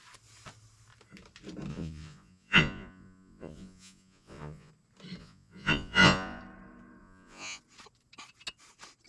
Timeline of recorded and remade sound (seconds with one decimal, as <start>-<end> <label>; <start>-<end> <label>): 0.0-1.7 recorded; 1.7-4.7 remade; 4.7-5.2 recorded; 5.2-6.4 remade; 6.4-7.0 recorded; 7.0-7.6 remade; 7.6-9.1 recorded

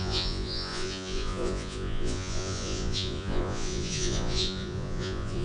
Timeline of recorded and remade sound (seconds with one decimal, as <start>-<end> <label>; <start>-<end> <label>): 0.0-5.4 remade

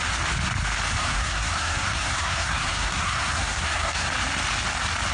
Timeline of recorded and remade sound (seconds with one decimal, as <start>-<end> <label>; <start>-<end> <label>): 0.0-1.0 recorded; 1.0-4.1 remade; 4.1-5.1 recorded

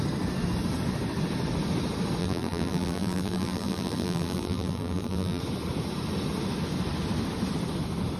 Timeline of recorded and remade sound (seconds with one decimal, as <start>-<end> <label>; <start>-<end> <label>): 0.0-2.2 recorded; 2.2-5.4 remade; 5.4-8.2 recorded

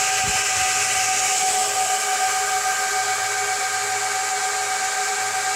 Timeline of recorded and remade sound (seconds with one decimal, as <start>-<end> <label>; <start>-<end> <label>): 0.0-5.6 recorded

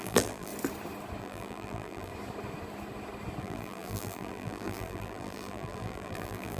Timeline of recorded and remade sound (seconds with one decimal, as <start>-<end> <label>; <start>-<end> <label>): 0.0-0.5 remade; 0.5-1.2 recorded; 1.2-2.1 remade; 2.1-3.4 recorded; 3.4-6.6 remade

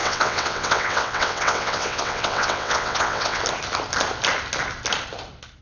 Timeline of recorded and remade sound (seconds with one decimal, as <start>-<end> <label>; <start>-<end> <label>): 0.0-3.4 remade; 3.4-5.6 recorded

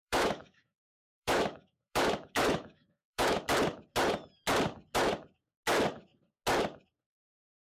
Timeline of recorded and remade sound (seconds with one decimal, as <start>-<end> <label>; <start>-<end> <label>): 0.0-3.4 remade; 3.4-7.7 recorded